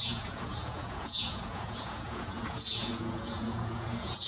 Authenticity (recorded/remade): remade